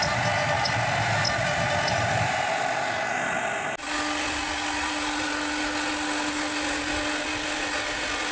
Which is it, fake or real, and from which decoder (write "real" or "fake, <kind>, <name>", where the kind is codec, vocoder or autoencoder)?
real